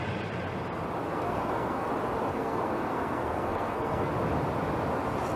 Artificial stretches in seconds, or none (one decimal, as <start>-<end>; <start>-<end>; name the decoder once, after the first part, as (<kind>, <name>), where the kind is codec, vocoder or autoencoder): 1.0-1.9 (codec, SNAC); 2.3-4.1